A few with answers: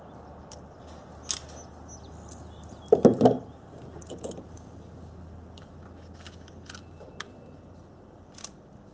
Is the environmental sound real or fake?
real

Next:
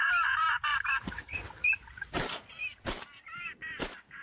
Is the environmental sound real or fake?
real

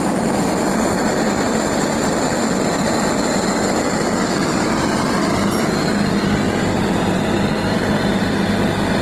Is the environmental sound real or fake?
real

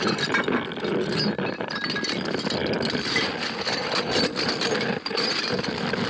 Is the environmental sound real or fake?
fake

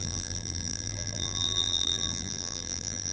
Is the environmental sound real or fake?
fake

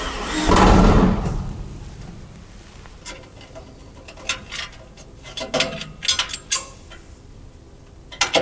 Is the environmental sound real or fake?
real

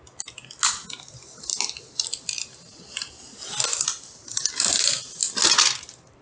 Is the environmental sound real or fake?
real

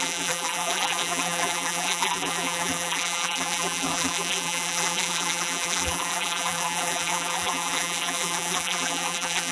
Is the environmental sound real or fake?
fake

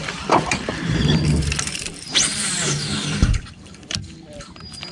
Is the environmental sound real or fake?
fake